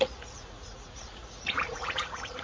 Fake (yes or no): yes